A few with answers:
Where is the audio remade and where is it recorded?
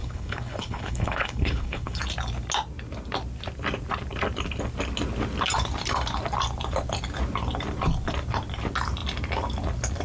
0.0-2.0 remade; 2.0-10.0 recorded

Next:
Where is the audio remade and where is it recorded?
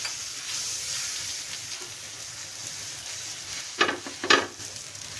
0.0-0.6 recorded; 0.6-1.2 remade; 1.2-5.2 recorded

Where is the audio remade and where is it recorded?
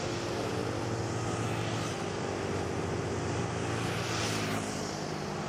0.0-0.6 remade; 0.6-3.9 recorded; 3.9-5.5 remade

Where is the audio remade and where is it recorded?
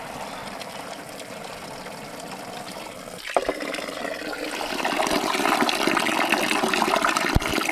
0.0-0.4 recorded; 0.4-1.4 remade; 1.4-7.7 recorded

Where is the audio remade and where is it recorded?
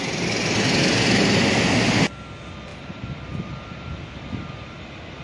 0.0-5.2 recorded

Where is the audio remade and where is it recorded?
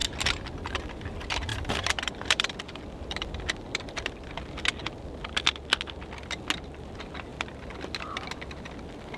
0.0-1.5 recorded; 1.5-4.3 remade; 4.3-7.3 recorded; 7.3-7.9 remade; 7.9-9.2 recorded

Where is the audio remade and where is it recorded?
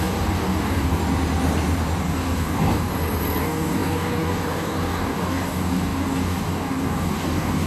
0.0-1.0 remade; 1.0-2.0 recorded; 2.0-2.9 remade; 2.9-3.4 recorded; 3.4-7.7 remade